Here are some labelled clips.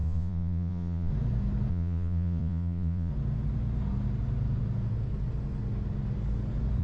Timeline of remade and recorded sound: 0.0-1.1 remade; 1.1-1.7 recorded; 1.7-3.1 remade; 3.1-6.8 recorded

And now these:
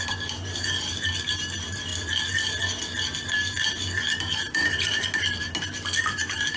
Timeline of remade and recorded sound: 0.0-6.6 recorded

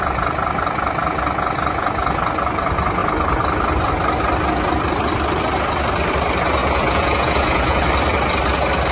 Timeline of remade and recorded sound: 0.0-6.6 recorded; 6.6-7.8 remade; 7.8-8.9 recorded

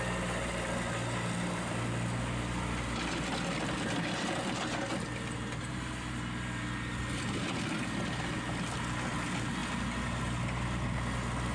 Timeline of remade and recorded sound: 0.0-11.5 recorded